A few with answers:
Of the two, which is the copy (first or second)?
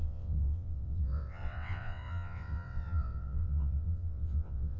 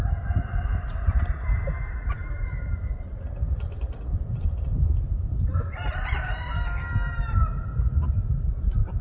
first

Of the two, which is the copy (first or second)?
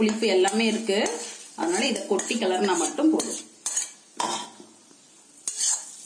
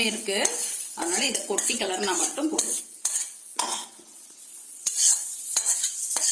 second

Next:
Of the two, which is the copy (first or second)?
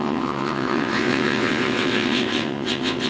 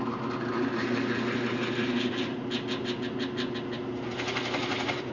first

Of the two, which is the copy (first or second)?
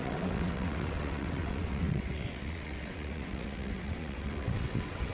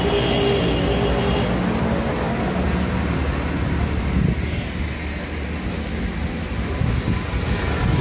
first